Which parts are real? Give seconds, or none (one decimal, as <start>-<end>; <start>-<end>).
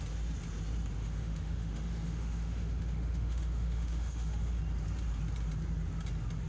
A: 0.0-1.0; 4.6-6.5